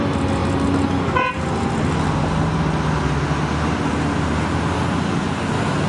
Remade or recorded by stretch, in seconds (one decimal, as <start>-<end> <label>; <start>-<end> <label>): 0.0-5.9 recorded